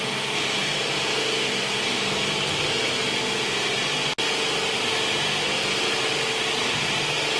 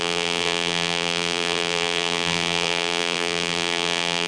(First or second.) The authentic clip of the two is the first